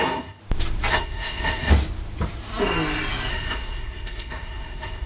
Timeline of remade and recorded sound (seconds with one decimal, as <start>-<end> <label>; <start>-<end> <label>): 0.0-0.4 remade; 0.4-0.9 recorded; 0.9-1.7 remade; 1.7-3.3 recorded; 3.3-5.1 remade